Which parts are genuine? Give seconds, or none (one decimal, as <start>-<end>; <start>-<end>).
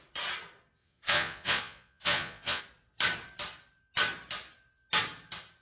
0.0-0.8; 2.6-5.6